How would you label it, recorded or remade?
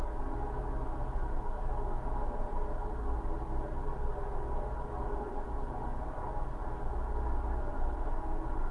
recorded